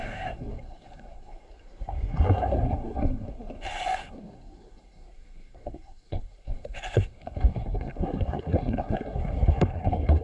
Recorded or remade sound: remade